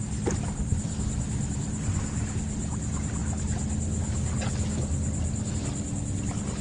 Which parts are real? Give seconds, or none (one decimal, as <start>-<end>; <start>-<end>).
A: 0.0-6.6